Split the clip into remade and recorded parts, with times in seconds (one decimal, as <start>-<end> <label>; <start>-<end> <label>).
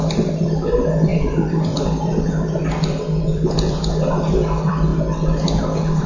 0.0-4.9 remade; 4.9-6.1 recorded